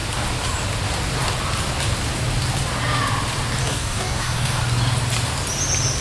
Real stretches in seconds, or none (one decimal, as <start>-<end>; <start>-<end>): 0.0-3.6; 4.6-6.0